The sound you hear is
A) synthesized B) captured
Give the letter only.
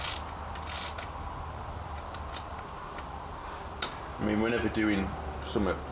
B